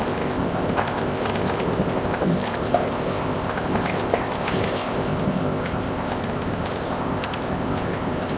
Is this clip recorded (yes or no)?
no